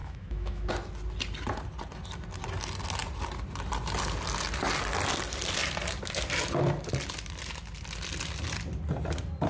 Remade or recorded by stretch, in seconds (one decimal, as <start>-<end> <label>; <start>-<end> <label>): 0.0-0.7 remade; 0.7-9.5 recorded